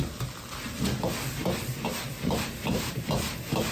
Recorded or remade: recorded